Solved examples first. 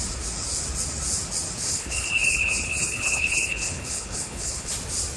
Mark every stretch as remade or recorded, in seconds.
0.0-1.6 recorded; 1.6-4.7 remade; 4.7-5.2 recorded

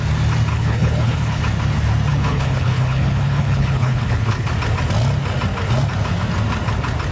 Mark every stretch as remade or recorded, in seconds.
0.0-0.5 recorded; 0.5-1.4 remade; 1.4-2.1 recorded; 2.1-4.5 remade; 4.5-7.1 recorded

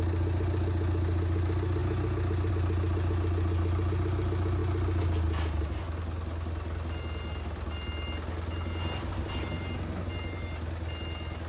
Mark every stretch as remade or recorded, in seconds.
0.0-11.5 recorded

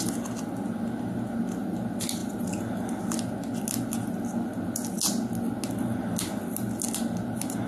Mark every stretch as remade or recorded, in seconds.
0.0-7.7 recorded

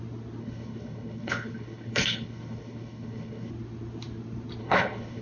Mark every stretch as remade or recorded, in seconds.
0.0-0.4 recorded; 0.4-3.5 remade; 3.5-4.6 recorded; 4.6-5.2 remade